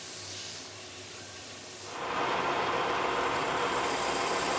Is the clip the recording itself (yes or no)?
yes